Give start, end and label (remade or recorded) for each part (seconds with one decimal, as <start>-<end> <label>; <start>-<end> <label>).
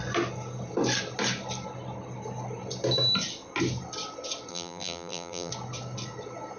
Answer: 0.0-4.5 recorded; 4.5-5.5 remade; 5.5-6.6 recorded